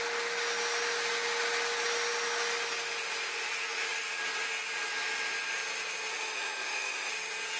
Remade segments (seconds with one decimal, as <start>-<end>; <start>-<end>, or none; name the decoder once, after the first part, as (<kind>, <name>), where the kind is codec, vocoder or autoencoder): 6.1-7.1 (autoencoder, DAC-VAE)